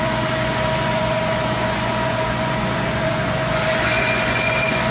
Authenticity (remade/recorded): remade